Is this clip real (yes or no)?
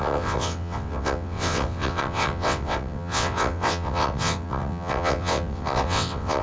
no